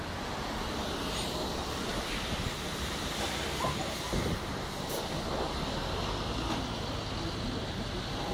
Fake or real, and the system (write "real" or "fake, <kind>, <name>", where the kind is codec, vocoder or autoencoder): real